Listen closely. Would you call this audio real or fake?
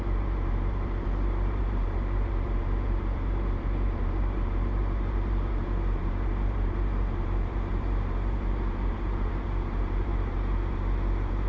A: fake